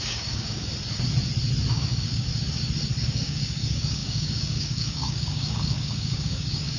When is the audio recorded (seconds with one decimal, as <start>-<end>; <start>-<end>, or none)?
0.7-1.7; 2.3-3.0